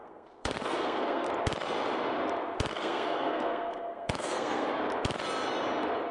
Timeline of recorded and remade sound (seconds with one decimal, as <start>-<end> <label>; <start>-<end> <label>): 0.0-1.3 remade; 1.3-2.7 recorded; 2.7-4.8 remade; 4.8-6.1 recorded